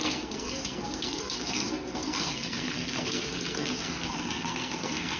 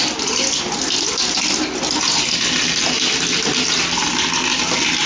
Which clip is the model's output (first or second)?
first